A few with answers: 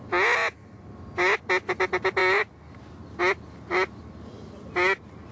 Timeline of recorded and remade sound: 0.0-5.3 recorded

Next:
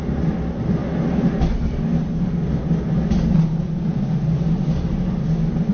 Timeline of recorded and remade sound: 0.0-5.7 recorded

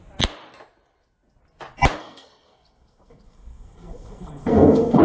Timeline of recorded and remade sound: 0.0-2.0 recorded; 2.0-5.0 remade

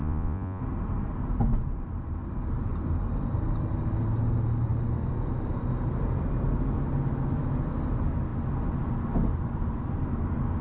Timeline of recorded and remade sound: 0.0-0.6 remade; 0.6-10.6 recorded

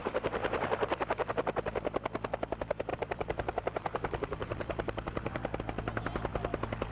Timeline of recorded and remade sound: 0.0-1.3 remade; 1.3-2.9 recorded; 2.9-5.6 remade; 5.6-6.9 recorded

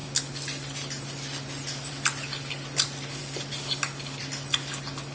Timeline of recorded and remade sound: 0.0-5.1 recorded